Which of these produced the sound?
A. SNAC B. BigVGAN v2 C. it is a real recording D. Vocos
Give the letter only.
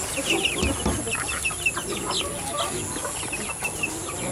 C